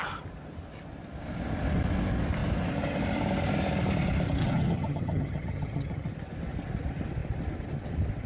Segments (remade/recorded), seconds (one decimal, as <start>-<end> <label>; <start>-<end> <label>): 0.0-4.4 recorded; 4.4-6.1 remade; 6.1-8.3 recorded

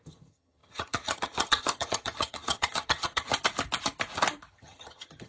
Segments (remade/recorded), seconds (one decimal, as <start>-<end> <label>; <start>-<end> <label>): 0.0-3.3 remade; 3.3-4.5 recorded; 4.5-5.3 remade